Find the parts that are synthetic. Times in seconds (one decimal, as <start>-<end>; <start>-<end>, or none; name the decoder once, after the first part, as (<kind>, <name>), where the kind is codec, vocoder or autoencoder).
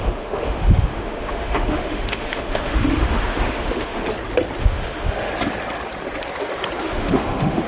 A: 0.0-4.0 (autoencoder, DAC-VAE); 4.6-5.3; 6.8-7.7